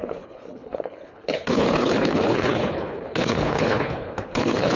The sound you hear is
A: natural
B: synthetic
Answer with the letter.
B